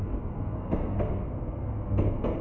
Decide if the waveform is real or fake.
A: fake